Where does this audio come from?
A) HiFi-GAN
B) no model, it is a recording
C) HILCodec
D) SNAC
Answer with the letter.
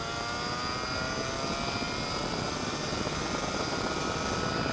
B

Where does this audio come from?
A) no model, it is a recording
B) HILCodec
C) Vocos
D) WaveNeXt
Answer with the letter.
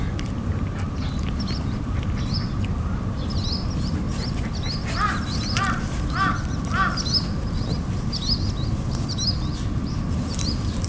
A